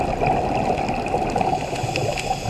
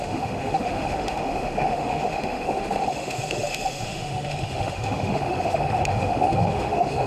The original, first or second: first